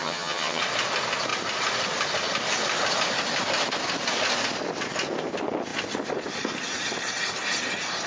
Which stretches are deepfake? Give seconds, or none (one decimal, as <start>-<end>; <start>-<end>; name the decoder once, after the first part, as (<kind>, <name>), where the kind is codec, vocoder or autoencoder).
0.0-0.6 (vocoder, HiFi-GAN)